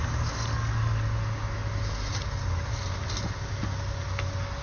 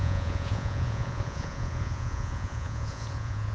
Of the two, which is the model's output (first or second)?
second